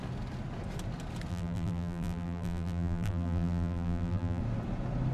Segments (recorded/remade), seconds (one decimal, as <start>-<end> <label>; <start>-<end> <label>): 0.0-1.3 recorded; 1.3-4.4 remade; 4.4-5.1 recorded